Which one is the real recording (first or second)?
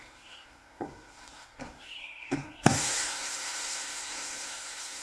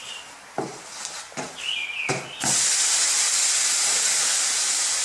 second